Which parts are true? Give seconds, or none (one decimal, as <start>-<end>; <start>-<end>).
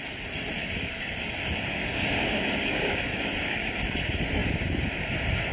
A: 0.0-0.6; 3.9-5.5